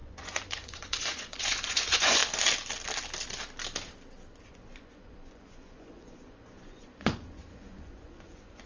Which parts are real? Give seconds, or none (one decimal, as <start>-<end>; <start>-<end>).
2.2-4.4